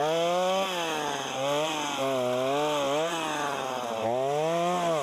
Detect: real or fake real